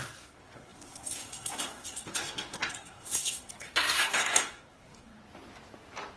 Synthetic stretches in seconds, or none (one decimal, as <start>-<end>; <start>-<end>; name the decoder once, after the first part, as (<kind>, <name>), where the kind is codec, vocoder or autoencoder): 0.0-5.2 (codec, SNAC)